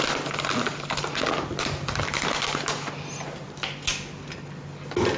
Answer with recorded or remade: recorded